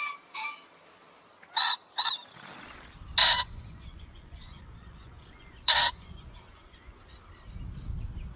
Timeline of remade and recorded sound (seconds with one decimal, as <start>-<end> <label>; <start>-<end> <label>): 0.0-3.2 recorded; 3.2-7.0 remade; 7.0-8.4 recorded